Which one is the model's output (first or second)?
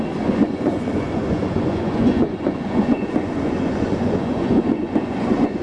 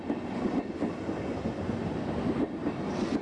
first